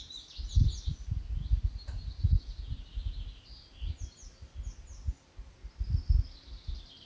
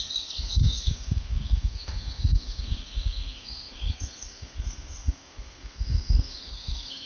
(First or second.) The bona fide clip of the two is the first